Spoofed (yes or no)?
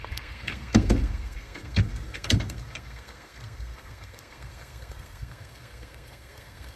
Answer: yes